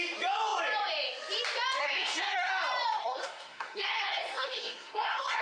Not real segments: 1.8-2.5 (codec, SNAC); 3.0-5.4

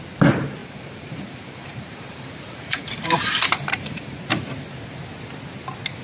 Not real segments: 0.6-4.2 (vocoder, BigVGAN v2)

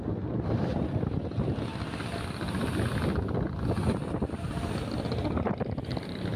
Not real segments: none

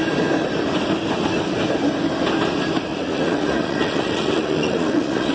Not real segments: 2.9-5.3 (vocoder, Vocos)

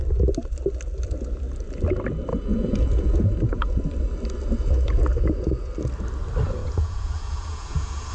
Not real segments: 2.3-3.8 (vocoder, Vocos); 5.1-5.7; 6.6-8.1

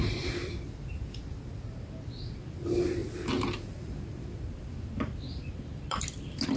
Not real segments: 0.0-0.4 (vocoder, BigVGAN v2); 2.6-3.0; 4.3-6.6

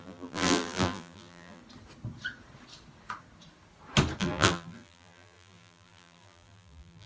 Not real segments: 0.0-1.6 (vocoder, BigVGAN v2); 4.2-7.1